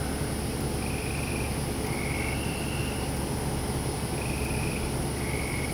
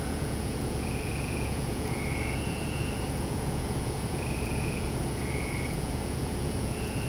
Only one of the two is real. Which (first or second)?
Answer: first